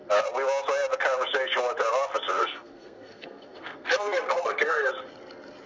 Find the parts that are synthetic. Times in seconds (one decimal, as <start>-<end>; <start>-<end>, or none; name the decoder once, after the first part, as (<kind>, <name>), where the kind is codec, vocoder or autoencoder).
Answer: 2.4-4.9 (codec, SNAC)